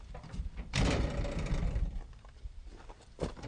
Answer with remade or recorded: remade